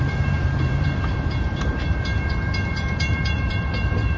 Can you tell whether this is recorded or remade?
remade